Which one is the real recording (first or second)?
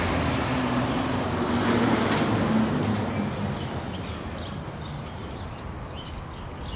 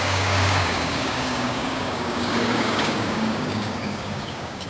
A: first